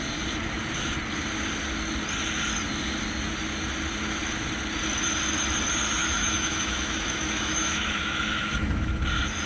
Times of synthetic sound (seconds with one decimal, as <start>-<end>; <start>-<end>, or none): 6.0-9.0